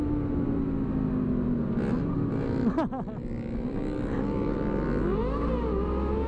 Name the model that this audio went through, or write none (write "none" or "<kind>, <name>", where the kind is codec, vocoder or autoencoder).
none